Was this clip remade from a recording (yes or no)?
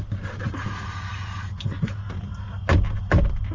no